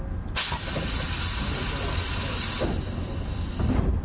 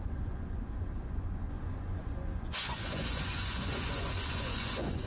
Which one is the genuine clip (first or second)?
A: first